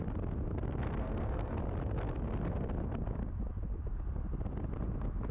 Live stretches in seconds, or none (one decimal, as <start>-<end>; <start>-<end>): 0.0-1.0; 1.6-5.3